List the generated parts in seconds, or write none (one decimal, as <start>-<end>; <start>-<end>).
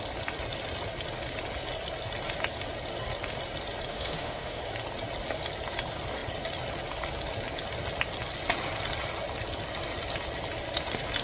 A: 3.9-4.6